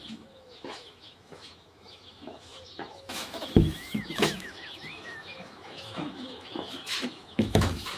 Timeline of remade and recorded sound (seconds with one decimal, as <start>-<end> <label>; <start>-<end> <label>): 0.0-8.0 remade